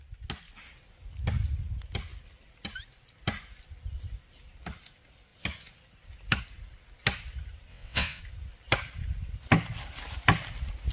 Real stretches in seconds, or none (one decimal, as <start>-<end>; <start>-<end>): 0.0-7.7; 8.2-10.9